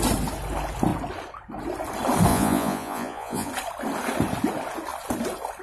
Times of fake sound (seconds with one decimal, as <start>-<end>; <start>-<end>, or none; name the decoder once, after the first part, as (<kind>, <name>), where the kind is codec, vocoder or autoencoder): 2.3-3.5 (vocoder, Vocos)